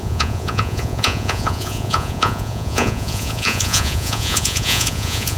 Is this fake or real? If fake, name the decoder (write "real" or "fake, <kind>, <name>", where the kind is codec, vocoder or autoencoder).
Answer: fake, vocoder, Vocos